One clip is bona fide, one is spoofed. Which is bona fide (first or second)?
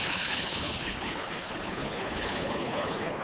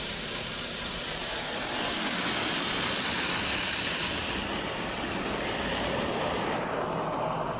second